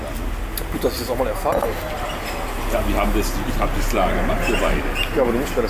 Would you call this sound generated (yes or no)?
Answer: no